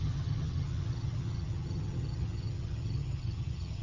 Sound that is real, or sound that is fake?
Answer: fake